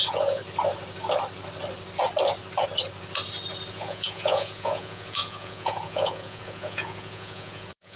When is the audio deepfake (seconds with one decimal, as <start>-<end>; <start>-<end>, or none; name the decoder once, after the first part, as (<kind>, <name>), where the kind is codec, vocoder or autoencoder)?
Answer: 0.0-0.4 (vocoder, Vocos); 3.7-8.0